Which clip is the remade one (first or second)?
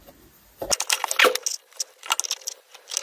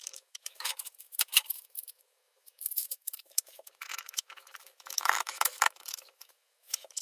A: second